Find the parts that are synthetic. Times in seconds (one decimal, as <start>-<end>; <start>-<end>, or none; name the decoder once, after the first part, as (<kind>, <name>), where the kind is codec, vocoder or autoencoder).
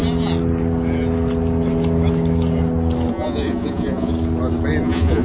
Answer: 3.1-4.1 (vocoder, Vocos); 4.8-5.2